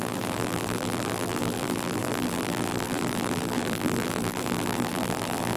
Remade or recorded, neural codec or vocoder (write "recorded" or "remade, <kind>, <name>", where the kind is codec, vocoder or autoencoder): remade, vocoder, BigVGAN v2